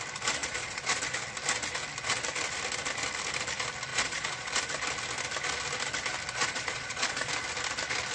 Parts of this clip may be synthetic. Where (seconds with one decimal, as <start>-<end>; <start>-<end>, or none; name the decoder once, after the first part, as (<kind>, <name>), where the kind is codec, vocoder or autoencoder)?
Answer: 0.4-1.0 (vocoder, Vocos); 3.9-4.5; 6.4-7.3